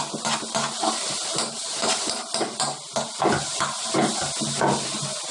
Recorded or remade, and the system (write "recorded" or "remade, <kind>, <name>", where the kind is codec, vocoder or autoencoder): recorded